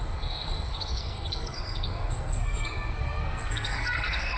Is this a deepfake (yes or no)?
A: yes